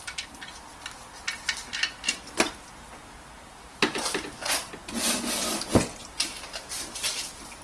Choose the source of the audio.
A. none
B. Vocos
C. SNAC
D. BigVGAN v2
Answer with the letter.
A